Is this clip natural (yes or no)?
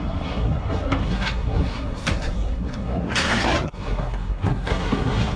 no